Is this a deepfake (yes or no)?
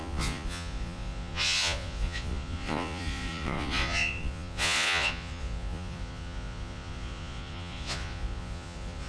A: yes